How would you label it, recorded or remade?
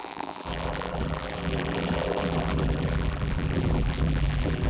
remade